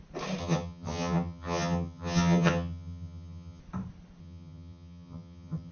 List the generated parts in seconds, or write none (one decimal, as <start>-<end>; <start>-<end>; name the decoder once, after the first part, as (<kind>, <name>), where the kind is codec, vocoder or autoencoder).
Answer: 0.4-3.6 (vocoder, HiFi-GAN); 4.2-5.7